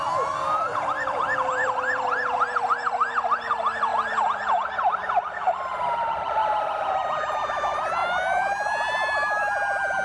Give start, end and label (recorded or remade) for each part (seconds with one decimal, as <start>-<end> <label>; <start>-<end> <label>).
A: 0.0-8.0 remade; 8.0-9.4 recorded; 9.4-10.0 remade